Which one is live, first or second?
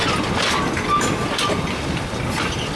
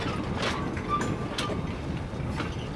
second